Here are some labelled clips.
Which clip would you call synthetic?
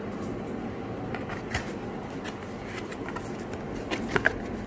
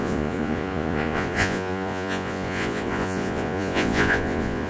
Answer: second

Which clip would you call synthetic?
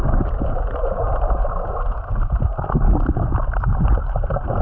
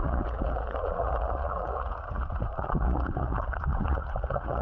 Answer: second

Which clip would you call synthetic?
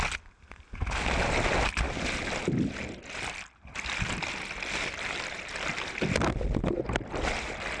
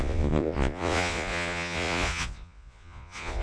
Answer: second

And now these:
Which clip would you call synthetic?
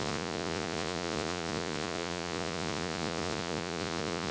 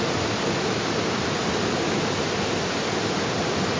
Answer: first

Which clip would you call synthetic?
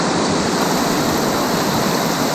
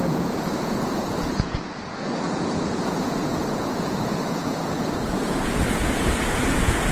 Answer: second